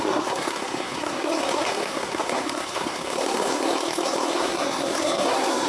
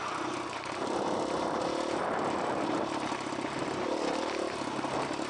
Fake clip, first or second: first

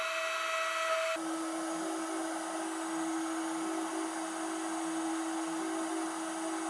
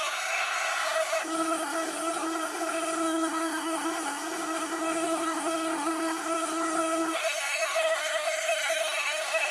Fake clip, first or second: second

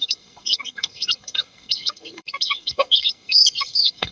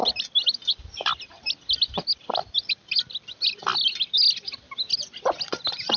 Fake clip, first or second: first